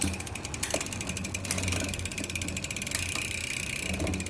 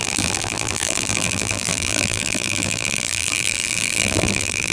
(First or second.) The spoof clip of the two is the second